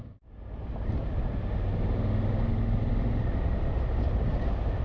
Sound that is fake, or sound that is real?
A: real